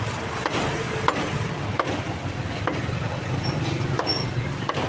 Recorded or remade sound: recorded